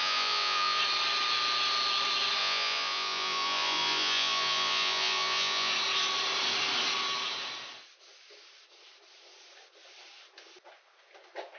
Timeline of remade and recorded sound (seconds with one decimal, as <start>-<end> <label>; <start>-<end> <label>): 0.0-0.8 remade; 0.8-2.4 recorded; 2.4-5.7 remade; 5.7-11.6 recorded

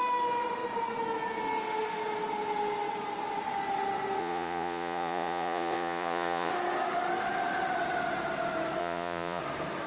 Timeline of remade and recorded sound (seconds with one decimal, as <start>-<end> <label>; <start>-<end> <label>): 0.0-4.2 recorded; 4.2-6.5 remade; 6.5-8.8 recorded; 8.8-9.4 remade; 9.4-9.9 recorded

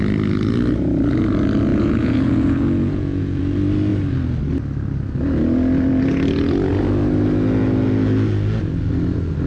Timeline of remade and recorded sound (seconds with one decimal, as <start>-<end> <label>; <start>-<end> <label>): 0.0-1.7 recorded; 1.7-3.4 remade; 3.4-9.5 recorded

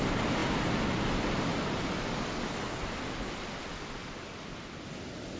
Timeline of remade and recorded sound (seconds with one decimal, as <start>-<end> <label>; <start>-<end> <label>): 0.0-5.4 recorded

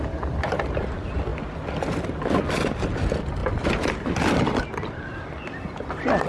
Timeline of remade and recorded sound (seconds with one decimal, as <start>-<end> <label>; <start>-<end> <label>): 0.0-6.3 recorded

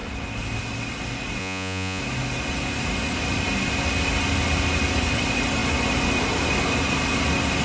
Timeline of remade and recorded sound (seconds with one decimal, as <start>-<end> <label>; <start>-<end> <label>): 0.0-1.4 recorded; 1.4-2.0 remade; 2.0-7.6 recorded

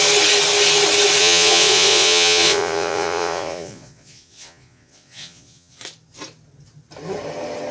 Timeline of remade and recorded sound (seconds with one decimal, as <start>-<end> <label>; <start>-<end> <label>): 0.0-1.2 recorded; 1.2-5.8 remade; 5.8-7.7 recorded

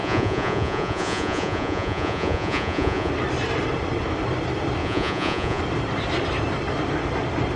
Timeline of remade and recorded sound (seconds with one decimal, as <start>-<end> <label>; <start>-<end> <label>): 0.0-3.1 remade; 3.1-4.8 recorded; 4.8-5.6 remade; 5.6-7.6 recorded